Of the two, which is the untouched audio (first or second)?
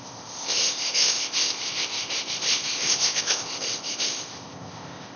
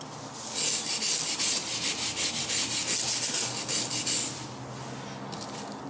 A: second